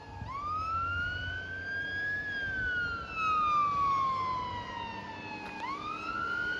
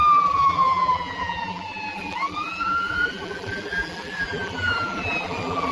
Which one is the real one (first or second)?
first